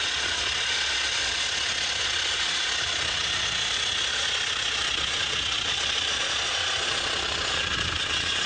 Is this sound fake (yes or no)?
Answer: yes